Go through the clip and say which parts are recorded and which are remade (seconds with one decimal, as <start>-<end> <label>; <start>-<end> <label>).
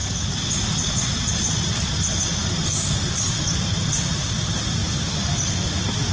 0.0-6.1 recorded